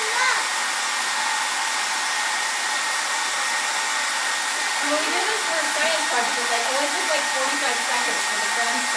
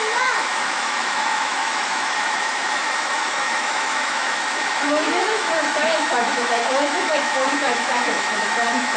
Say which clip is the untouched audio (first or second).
first